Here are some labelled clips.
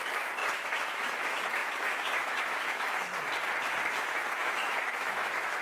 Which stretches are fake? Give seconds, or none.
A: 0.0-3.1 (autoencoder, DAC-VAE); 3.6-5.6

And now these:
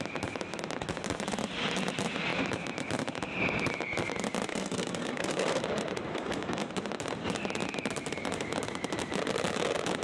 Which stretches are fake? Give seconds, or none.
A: 4.5-5.6 (codec, SNAC); 6.1-6.7

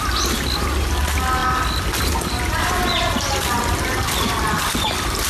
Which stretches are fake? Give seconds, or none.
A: none

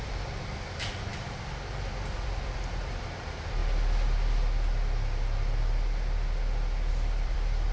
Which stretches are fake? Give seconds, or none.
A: 0.0-3.6 (vocoder, BigVGAN v2); 6.9-7.7

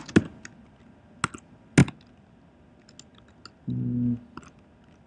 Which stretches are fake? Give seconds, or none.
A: none

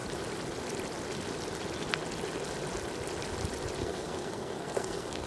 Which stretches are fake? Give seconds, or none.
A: 3.8-5.3 (codec, SNAC)

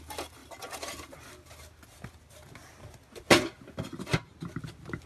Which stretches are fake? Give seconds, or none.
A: none

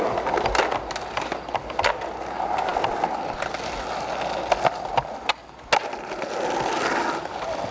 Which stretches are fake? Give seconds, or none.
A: 2.7-3.5 (vocoder, BigVGAN v2)